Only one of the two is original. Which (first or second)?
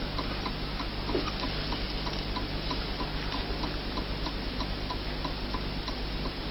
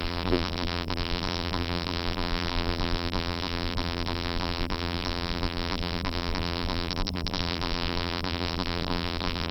first